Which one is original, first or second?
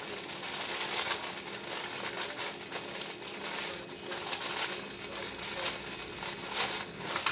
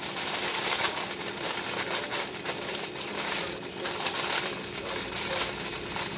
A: first